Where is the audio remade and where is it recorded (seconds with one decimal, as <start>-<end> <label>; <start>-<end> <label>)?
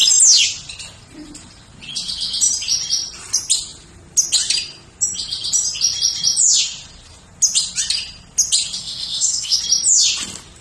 0.0-8.8 recorded; 8.8-9.6 remade; 9.6-10.6 recorded